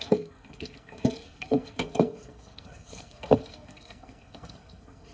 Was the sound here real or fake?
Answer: fake